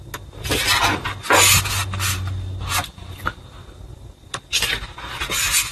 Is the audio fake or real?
real